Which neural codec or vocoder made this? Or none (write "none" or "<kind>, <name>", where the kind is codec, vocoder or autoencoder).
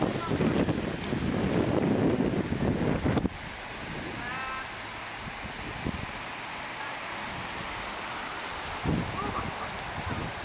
none